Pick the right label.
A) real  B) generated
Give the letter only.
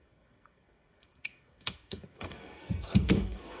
B